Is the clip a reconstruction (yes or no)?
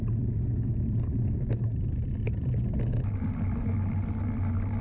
no